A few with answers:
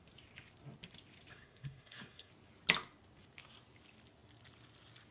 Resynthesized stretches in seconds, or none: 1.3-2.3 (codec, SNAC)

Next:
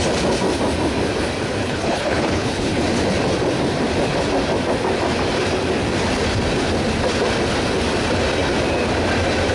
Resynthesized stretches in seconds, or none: 1.6-2.8 (codec, HILCodec)

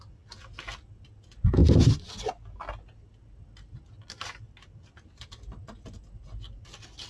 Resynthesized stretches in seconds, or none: none

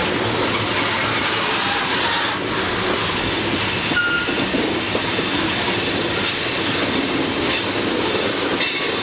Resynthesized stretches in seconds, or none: none

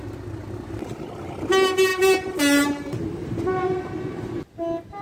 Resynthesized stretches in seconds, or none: 1.9-3.4 (vocoder, BigVGAN v2)

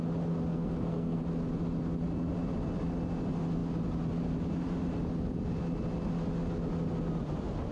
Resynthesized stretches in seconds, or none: 0.5-1.2 (codec, SNAC)

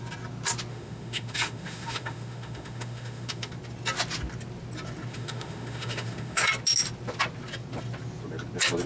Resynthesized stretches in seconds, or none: 0.7-3.5 (autoencoder, DAC-VAE); 5.1-6.4

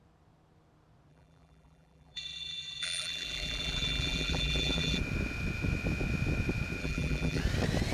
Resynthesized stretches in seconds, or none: 1.1-5.0 (vocoder, BigVGAN v2); 6.8-7.4